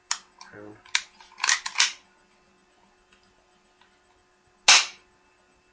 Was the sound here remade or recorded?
recorded